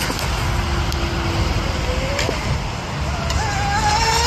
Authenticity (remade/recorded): recorded